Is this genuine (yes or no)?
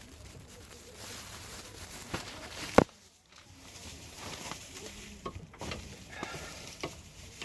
no